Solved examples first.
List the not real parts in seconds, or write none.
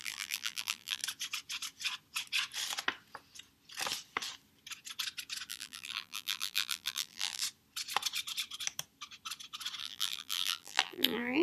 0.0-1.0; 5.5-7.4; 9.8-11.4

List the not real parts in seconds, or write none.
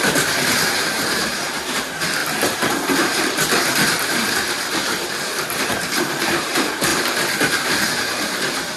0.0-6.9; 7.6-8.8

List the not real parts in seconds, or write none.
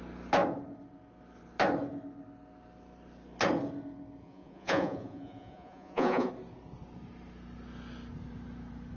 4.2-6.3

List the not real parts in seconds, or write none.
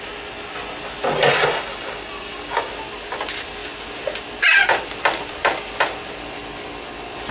1.3-2.7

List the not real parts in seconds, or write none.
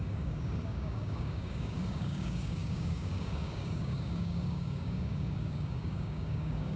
0.0-6.8